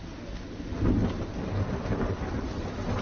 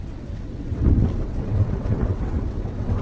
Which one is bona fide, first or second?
first